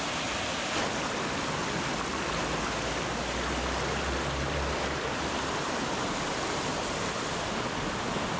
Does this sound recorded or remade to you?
recorded